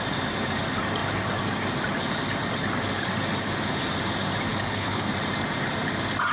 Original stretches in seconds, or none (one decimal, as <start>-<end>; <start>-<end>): 0.0-4.5; 5.1-6.3